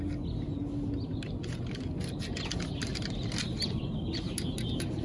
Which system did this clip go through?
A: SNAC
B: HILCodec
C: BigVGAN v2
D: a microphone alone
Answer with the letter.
D